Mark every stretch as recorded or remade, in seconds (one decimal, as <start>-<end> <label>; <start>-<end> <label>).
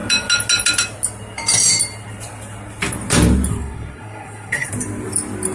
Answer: 0.0-3.5 recorded; 3.5-4.7 remade; 4.7-5.5 recorded